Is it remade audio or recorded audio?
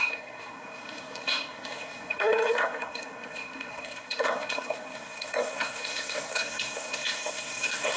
remade